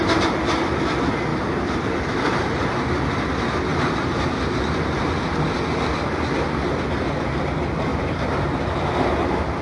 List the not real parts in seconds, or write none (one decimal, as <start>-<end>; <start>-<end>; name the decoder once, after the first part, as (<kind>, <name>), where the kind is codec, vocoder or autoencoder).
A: 1.3-2.0 (vocoder, BigVGAN v2); 3.7-5.6; 7.9-9.1